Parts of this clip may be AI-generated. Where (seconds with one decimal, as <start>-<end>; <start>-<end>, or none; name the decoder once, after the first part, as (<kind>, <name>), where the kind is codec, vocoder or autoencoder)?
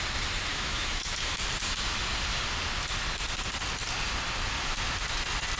0.5-1.3 (autoencoder, DAC-VAE)